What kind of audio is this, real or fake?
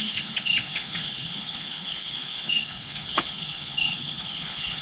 fake